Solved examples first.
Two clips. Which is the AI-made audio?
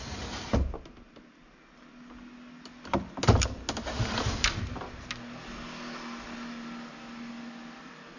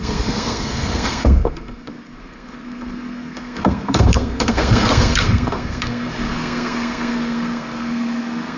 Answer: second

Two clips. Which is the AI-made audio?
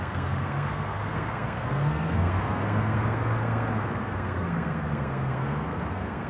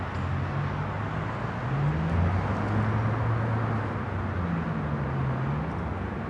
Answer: first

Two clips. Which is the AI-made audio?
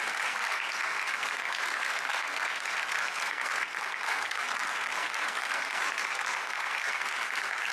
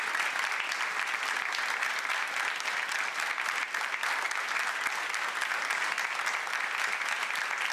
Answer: first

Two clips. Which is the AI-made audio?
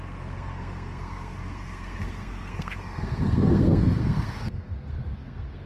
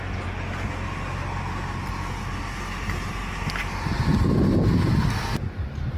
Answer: first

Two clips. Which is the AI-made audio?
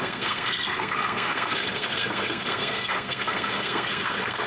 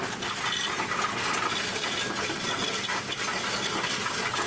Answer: first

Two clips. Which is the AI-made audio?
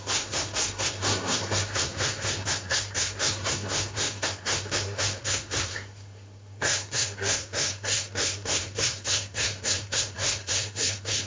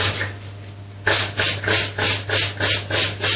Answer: first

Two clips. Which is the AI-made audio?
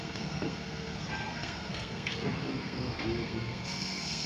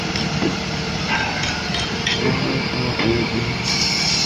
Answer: first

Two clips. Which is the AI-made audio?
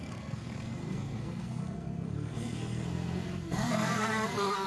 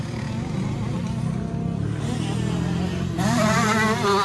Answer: first